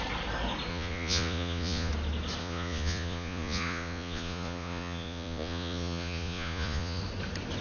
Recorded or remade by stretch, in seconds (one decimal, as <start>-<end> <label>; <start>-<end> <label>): 0.0-0.7 recorded; 0.7-1.9 remade; 1.9-2.4 recorded; 2.4-7.0 remade; 7.0-7.6 recorded